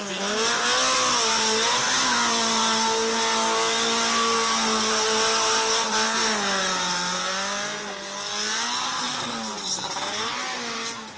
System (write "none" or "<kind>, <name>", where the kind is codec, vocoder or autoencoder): none